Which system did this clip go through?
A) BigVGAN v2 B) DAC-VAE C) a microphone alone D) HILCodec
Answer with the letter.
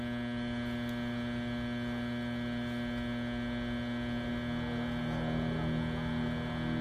C